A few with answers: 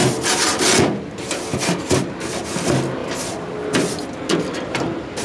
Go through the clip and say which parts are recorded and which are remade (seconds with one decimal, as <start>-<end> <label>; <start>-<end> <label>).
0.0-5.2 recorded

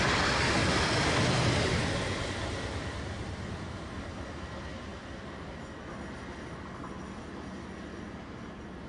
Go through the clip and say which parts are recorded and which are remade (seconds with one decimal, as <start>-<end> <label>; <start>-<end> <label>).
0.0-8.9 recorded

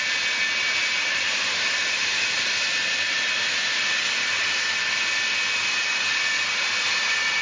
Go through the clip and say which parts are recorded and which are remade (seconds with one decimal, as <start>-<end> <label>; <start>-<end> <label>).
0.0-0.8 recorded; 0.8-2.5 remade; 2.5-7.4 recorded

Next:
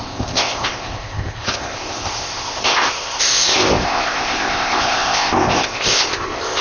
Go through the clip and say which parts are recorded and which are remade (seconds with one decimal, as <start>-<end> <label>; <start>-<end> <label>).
0.0-6.6 remade

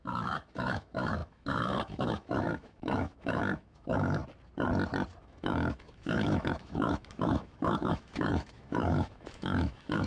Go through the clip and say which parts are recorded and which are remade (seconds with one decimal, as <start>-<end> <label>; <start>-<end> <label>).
0.0-4.2 remade; 4.2-5.2 recorded; 5.2-10.1 remade

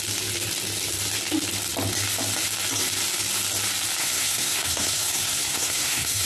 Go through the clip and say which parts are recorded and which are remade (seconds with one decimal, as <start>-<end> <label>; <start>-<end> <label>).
0.0-4.0 recorded; 4.0-6.3 remade

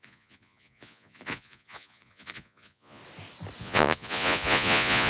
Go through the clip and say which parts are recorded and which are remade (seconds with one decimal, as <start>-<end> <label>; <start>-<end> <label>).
0.0-3.0 remade; 3.0-3.6 recorded; 3.6-5.1 remade

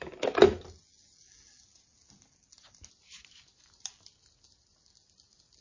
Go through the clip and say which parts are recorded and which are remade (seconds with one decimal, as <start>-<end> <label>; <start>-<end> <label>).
0.0-5.6 recorded